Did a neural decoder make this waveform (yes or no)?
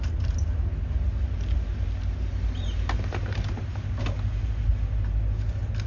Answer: no